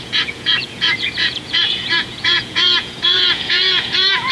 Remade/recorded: remade